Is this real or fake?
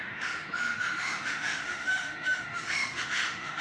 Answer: fake